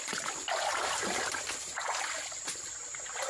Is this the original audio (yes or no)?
yes